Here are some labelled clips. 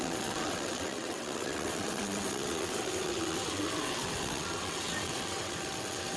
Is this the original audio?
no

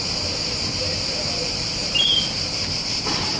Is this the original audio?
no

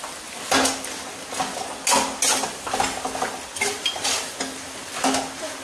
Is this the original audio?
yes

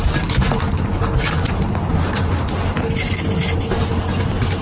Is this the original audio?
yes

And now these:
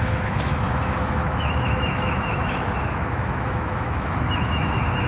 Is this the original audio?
no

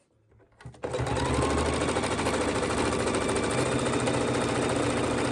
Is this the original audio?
yes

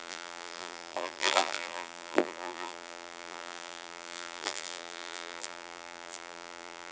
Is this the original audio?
no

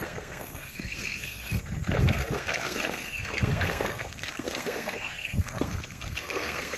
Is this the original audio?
no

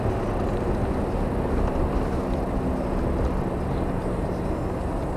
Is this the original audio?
yes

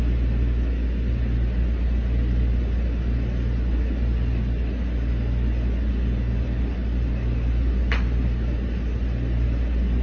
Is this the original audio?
yes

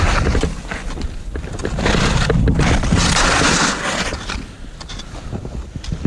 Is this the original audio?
yes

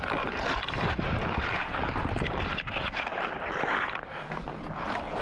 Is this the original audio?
no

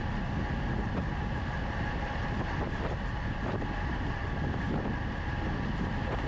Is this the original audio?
yes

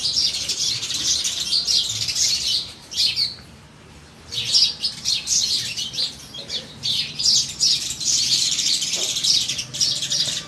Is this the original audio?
no